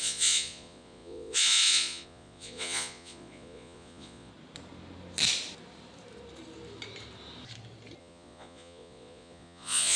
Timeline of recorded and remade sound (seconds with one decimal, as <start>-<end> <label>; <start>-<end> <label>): 0.0-4.3 remade; 4.3-8.0 recorded; 8.0-10.0 remade